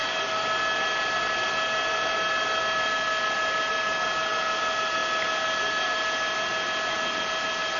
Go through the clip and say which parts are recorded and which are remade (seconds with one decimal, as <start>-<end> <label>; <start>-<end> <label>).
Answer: 0.0-7.8 recorded